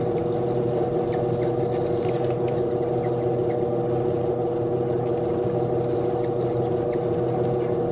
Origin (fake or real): real